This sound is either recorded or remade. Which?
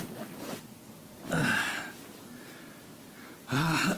recorded